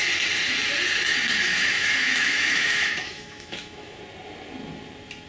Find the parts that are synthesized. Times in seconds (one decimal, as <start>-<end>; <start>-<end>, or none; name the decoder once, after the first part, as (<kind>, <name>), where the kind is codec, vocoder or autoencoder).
1.4-4.0 (autoencoder, DAC-VAE)